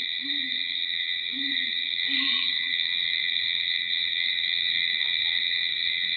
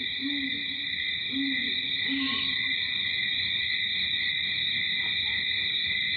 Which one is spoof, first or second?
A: first